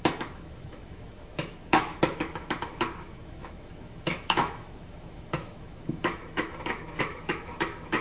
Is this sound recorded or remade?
remade